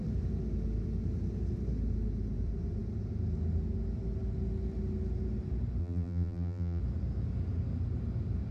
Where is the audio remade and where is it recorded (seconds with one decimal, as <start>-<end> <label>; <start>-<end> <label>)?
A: 0.0-5.8 recorded; 5.8-6.8 remade; 6.8-8.5 recorded